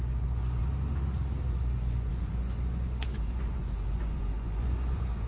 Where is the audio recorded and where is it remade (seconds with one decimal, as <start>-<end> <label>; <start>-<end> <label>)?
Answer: 0.0-0.6 remade; 0.6-1.5 recorded; 1.5-5.3 remade